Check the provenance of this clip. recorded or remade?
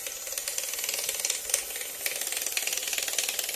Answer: recorded